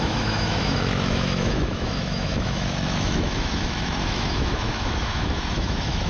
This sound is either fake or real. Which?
fake